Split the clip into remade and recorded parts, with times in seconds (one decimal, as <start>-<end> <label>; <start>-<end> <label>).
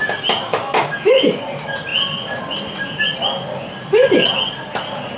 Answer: 0.0-0.5 recorded; 0.5-1.4 remade; 1.4-5.2 recorded